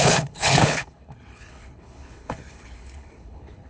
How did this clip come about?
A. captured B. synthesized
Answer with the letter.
B